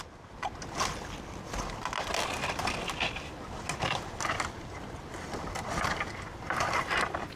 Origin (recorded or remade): recorded